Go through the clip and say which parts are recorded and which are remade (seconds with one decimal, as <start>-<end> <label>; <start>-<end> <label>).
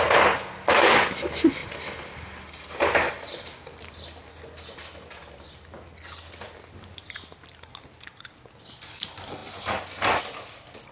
0.0-1.6 recorded; 1.6-4.3 remade; 4.3-9.4 recorded; 9.4-10.2 remade; 10.2-10.9 recorded